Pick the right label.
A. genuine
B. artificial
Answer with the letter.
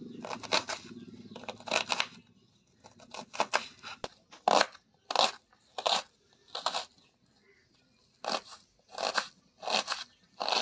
A